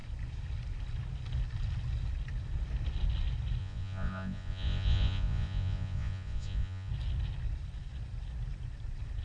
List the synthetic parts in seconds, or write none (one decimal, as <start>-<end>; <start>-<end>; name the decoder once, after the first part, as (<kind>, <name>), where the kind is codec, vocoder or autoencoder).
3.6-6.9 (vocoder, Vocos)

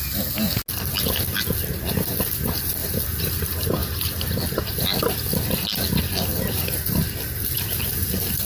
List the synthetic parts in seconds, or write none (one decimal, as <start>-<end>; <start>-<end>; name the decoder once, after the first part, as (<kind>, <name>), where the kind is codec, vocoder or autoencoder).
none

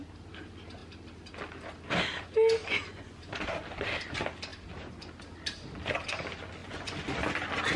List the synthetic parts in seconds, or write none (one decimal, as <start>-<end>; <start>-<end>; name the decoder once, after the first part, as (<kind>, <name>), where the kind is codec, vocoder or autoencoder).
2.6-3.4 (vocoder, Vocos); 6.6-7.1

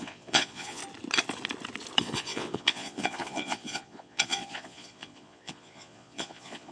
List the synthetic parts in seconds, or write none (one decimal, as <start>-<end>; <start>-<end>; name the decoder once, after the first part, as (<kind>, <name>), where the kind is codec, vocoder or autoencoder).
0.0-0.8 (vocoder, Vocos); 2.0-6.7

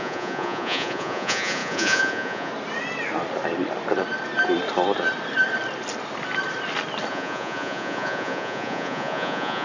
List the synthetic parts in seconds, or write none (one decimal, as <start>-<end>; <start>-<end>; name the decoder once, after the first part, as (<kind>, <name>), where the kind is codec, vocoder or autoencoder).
0.0-2.5 (vocoder, Vocos); 7.1-9.6

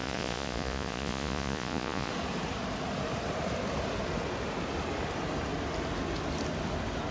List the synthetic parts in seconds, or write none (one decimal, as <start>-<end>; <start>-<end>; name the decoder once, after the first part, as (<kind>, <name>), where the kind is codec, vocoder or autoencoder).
0.0-2.1 (vocoder, Vocos)